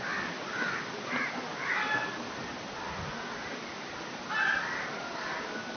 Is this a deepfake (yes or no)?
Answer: no